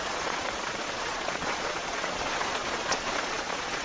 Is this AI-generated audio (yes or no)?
yes